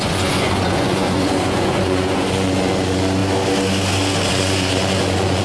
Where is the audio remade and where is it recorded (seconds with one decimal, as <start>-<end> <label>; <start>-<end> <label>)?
0.0-3.2 remade; 3.2-4.3 recorded; 4.3-5.4 remade